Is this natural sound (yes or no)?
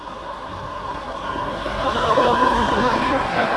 no